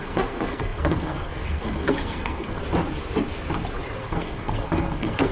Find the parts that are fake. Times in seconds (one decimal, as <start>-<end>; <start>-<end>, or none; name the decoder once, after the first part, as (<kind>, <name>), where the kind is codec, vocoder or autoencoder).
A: 0.0-2.6 (codec, SNAC); 4.0-5.3